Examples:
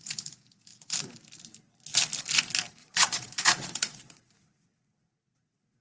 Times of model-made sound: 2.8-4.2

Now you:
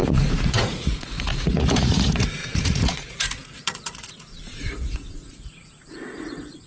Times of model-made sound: 0.0-6.7

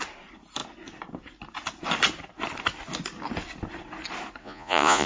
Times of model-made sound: 4.4-5.1

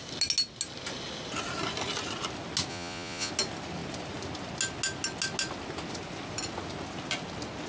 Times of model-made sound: 2.7-3.3

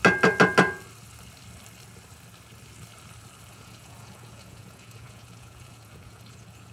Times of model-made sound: 3.5-6.7

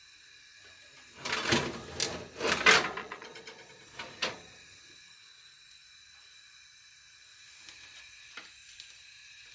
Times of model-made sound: 3.0-3.7

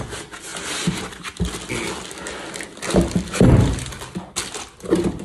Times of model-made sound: none